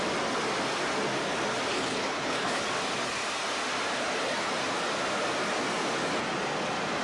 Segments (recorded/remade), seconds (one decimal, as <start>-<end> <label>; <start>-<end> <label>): 0.0-1.7 recorded; 1.7-2.6 remade; 2.6-7.0 recorded